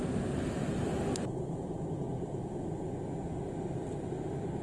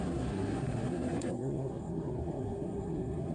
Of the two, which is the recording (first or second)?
first